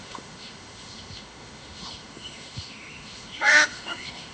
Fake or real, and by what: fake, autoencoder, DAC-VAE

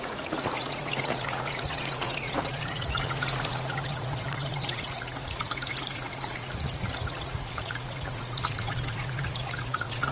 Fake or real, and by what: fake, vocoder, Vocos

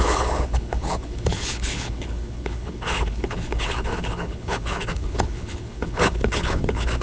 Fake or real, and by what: fake, codec, HILCodec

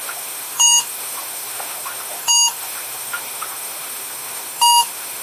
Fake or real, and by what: fake, autoencoder, DAC-VAE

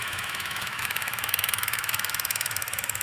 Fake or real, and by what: fake, autoencoder, DAC-VAE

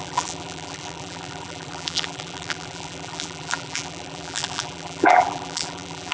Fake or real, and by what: fake, vocoder, BigVGAN v2